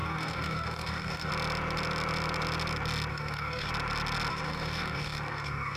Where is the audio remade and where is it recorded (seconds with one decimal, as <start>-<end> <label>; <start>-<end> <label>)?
0.0-1.3 remade; 1.3-3.1 recorded; 3.1-3.7 remade; 3.7-4.3 recorded; 4.3-5.8 remade